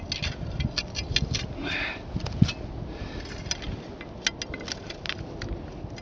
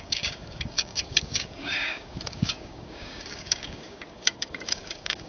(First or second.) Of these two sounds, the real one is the first